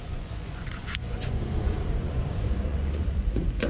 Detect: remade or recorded remade